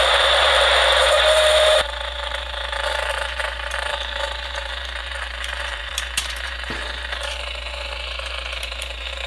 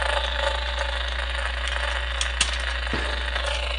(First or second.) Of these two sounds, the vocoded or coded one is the first